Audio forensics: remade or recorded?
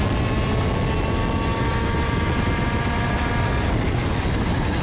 recorded